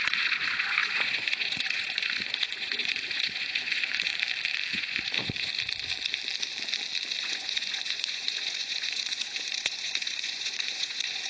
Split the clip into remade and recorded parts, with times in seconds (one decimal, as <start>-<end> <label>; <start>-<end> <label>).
0.0-4.1 remade; 4.1-4.7 recorded; 4.7-5.5 remade; 5.5-7.2 recorded; 7.2-11.3 remade